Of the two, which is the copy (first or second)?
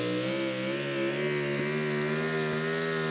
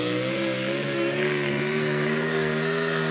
second